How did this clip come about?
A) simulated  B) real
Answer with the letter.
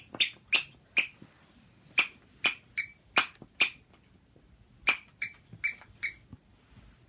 B